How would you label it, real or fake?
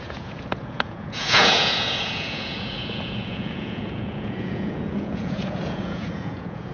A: fake